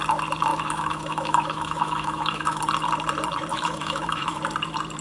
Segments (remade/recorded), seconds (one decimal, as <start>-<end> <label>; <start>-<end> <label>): 0.0-0.5 recorded; 0.5-2.6 remade; 2.6-3.5 recorded; 3.5-4.4 remade; 4.4-5.0 recorded